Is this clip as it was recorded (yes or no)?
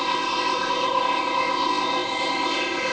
no